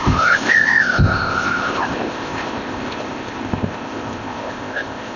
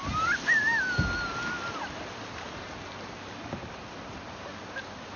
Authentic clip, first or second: second